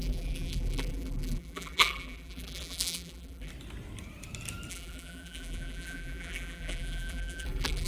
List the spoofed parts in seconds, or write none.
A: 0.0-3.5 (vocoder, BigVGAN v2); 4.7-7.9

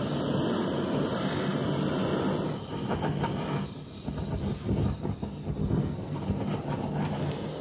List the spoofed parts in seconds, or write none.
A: 5.6-6.2 (codec, SNAC)

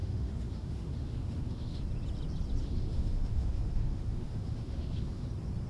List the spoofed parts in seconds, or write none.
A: 0.0-1.8 (autoencoder, DAC-VAE); 2.6-5.3

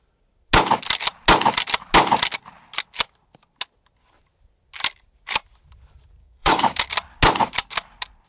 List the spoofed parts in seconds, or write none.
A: 6.2-6.8 (codec, DAC)